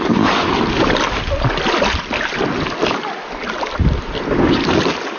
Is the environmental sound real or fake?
real